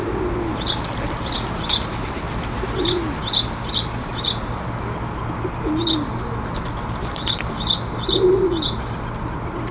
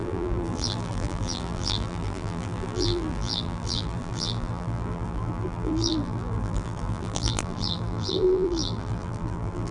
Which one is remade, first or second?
second